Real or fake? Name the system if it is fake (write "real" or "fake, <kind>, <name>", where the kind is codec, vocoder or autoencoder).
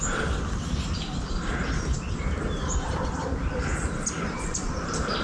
real